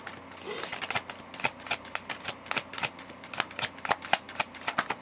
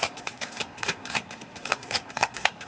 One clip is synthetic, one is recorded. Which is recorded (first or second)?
first